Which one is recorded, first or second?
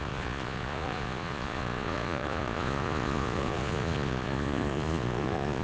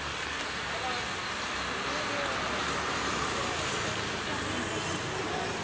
second